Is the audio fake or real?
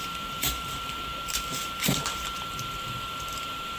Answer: fake